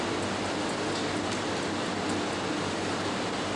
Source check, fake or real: real